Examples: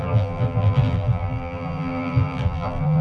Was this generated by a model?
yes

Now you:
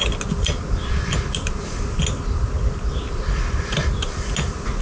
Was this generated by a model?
no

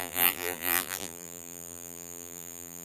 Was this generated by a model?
yes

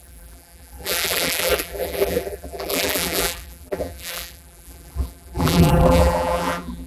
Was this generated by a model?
yes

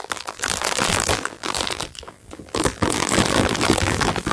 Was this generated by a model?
yes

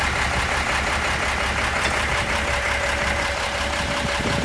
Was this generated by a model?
yes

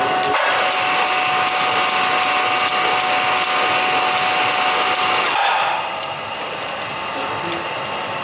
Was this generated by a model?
no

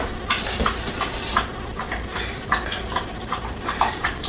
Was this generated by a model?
yes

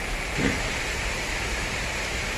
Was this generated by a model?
yes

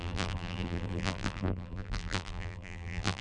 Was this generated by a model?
yes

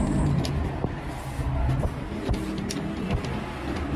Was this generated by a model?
no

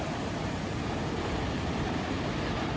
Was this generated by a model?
yes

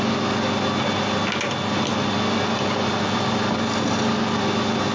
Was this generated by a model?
no